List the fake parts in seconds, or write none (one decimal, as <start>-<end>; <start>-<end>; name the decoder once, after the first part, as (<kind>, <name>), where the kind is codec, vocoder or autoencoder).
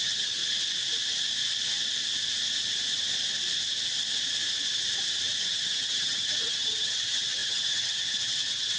0.0-0.4 (vocoder, HiFi-GAN); 5.4-8.8